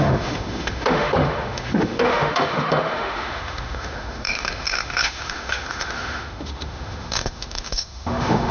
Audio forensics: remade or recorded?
remade